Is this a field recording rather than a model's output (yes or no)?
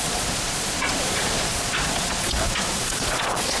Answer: no